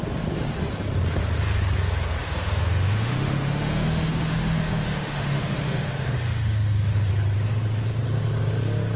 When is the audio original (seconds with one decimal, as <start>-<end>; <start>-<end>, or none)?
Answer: 0.0-2.2; 7.1-9.0